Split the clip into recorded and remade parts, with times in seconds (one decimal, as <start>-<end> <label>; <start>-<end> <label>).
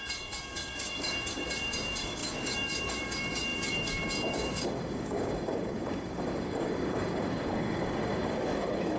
0.0-9.0 remade